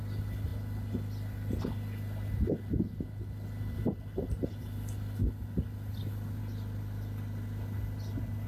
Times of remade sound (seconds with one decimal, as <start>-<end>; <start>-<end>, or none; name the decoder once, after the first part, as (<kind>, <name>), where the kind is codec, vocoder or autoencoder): none